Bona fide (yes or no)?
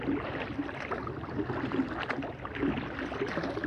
yes